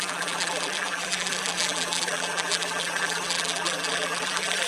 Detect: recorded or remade remade